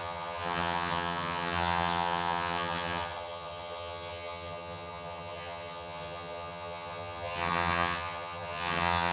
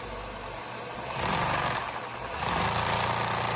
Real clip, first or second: second